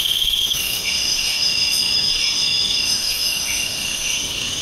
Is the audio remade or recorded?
remade